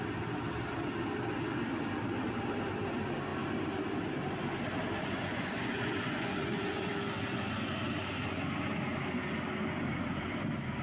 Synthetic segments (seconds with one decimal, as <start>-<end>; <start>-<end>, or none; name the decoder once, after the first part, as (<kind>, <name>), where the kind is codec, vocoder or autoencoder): 5.0-6.9 (vocoder, Vocos)